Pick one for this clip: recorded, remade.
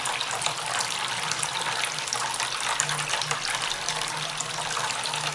recorded